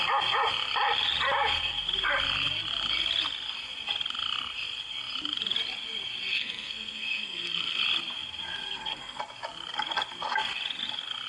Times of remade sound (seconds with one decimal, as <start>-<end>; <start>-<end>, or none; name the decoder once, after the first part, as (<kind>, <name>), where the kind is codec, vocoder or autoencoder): 6.3-7.8 (codec, SNAC); 8.6-9.2